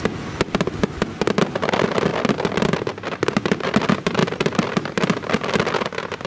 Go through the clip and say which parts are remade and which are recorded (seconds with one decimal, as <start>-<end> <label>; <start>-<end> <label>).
0.0-6.3 recorded

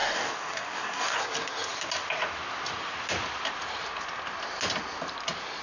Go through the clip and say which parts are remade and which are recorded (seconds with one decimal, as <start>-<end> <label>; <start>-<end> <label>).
0.0-1.2 remade; 1.2-5.6 recorded

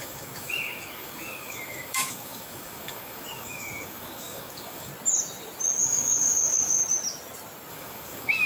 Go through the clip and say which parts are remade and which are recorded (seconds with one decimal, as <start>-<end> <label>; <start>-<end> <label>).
0.0-4.9 remade; 4.9-5.8 recorded; 5.8-6.8 remade; 6.8-7.7 recorded; 7.7-8.5 remade

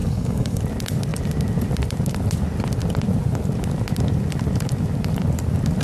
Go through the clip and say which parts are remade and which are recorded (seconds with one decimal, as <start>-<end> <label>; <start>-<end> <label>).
0.0-0.6 remade; 0.6-5.8 recorded